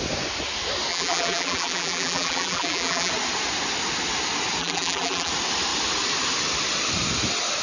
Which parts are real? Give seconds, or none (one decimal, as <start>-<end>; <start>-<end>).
0.0-0.9; 3.1-4.6; 5.3-7.6